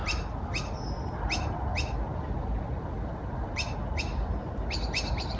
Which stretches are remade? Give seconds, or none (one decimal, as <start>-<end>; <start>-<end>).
none